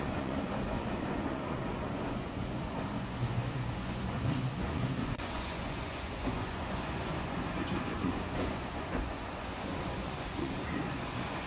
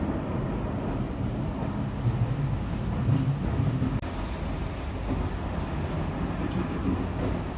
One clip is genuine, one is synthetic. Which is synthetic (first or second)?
first